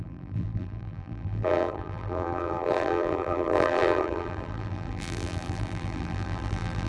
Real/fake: fake